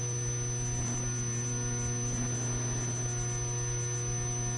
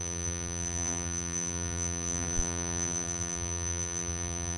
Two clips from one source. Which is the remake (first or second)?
second